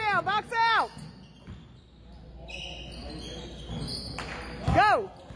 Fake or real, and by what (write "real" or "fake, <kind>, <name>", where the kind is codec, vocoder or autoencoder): real